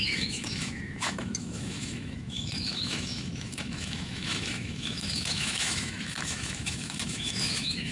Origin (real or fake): fake